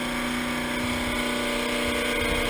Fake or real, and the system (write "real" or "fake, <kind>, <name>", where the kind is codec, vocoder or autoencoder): real